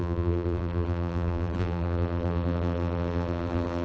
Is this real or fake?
fake